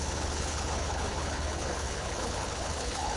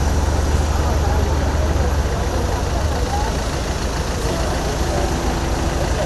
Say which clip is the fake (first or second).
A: first